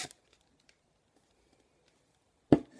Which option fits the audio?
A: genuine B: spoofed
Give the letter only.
A